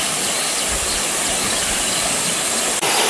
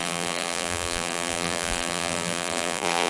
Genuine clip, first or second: first